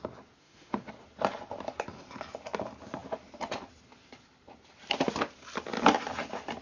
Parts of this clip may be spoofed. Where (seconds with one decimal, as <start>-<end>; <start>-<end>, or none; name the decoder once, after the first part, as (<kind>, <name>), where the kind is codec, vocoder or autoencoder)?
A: 0.4-0.9 (autoencoder, DAC-VAE)